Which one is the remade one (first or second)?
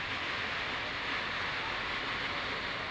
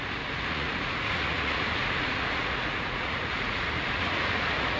second